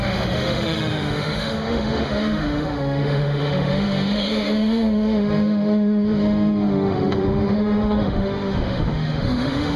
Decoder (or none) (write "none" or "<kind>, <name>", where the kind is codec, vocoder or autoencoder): autoencoder, DAC-VAE